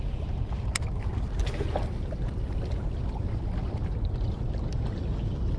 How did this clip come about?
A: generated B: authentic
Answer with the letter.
B